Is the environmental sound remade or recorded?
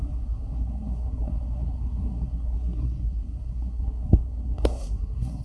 remade